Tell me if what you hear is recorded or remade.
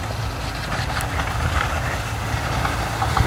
recorded